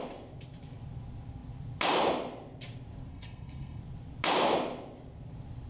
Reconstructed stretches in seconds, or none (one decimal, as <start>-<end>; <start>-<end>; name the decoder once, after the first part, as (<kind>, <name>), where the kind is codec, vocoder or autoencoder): 3.1-3.8 (codec, SNAC)